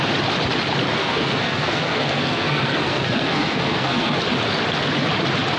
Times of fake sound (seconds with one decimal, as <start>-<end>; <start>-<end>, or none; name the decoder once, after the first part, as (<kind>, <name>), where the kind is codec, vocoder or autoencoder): 1.0-4.2 (codec, SNAC)

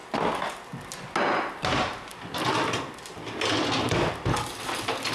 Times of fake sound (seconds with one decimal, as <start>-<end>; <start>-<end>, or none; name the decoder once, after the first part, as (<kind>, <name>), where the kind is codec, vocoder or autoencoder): none

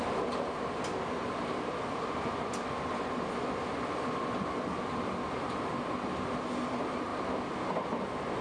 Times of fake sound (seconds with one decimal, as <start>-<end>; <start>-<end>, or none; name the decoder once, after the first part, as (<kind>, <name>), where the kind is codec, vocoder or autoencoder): none

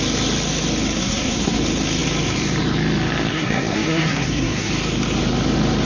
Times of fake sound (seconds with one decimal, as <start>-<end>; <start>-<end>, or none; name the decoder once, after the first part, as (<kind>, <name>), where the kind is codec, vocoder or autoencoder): 1.0-1.6 (codec, SNAC); 3.3-4.7

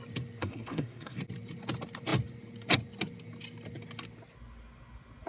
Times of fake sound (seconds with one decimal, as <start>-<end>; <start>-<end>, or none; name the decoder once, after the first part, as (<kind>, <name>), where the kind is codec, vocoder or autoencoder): 0.4-1.2 (codec, SNAC)

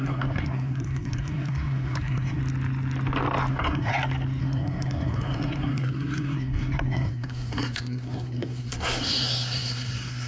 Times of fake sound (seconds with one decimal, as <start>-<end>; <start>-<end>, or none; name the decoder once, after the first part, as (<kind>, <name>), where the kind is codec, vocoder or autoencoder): 0.0-2.4 (codec, SNAC); 3.5-3.9; 4.4-10.3

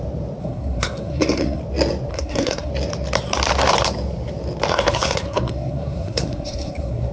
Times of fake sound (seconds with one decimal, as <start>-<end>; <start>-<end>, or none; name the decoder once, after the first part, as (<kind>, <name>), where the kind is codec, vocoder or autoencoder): 0.4-1.6 (codec, SNAC); 2.1-2.7; 4.7-7.1

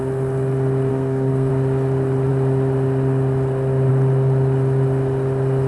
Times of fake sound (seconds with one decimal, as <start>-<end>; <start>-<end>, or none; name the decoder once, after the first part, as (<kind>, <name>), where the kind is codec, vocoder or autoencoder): 0.9-1.5 (codec, SNAC)